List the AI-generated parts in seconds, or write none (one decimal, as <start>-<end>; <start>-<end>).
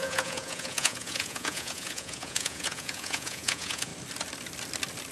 0.0-3.9